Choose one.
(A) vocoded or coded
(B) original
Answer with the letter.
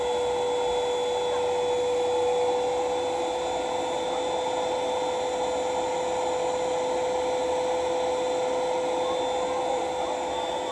B